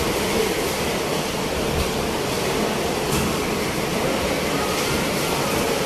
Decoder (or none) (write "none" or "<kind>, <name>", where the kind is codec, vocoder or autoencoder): none